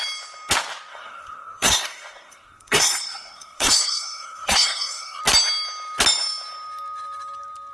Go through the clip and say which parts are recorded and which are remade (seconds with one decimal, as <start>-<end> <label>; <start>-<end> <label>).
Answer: 0.0-0.9 recorded; 0.9-5.2 remade; 5.2-7.7 recorded